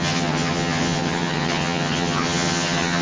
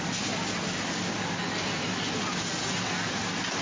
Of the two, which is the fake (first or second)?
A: first